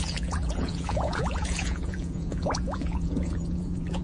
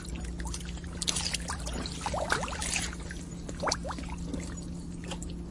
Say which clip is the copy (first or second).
first